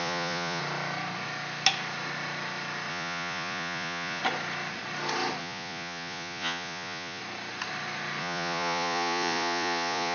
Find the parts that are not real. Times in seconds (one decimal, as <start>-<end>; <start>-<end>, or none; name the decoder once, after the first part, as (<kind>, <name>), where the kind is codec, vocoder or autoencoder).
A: 0.0-0.6 (vocoder, Vocos); 2.9-4.2; 5.4-7.2; 8.2-10.1